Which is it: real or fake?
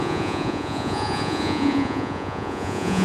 fake